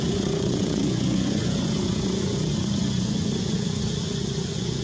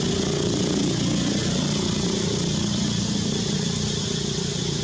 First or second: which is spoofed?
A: first